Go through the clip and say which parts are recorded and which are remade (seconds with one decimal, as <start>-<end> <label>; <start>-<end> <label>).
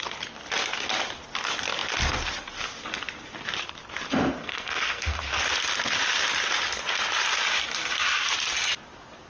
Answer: 0.0-4.4 recorded; 4.4-5.4 remade; 5.4-9.3 recorded